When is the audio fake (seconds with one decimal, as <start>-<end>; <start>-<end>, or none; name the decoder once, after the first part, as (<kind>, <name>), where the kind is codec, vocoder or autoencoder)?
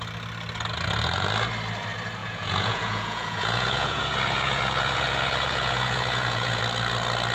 2.2-6.6 (vocoder, Vocos)